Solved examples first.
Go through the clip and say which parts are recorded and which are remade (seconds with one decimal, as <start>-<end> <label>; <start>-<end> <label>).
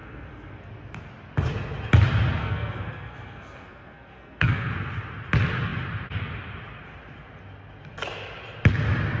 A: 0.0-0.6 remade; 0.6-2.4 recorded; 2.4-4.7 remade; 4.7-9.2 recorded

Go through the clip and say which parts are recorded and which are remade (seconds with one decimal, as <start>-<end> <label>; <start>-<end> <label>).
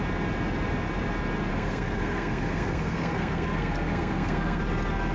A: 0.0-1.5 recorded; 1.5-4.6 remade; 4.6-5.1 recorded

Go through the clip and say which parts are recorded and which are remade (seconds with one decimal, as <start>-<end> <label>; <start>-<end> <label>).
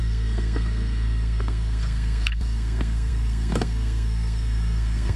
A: 0.0-5.2 remade